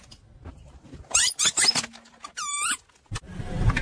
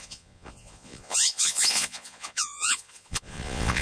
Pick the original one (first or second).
first